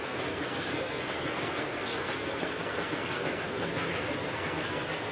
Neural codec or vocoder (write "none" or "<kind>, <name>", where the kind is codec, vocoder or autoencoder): codec, SNAC